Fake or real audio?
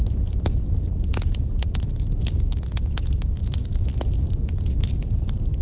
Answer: real